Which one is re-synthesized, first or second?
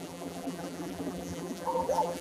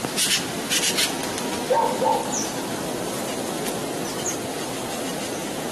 first